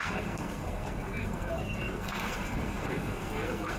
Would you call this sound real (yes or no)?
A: no